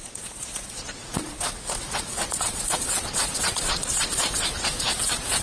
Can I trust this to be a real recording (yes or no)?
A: no